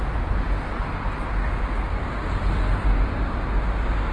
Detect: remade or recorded recorded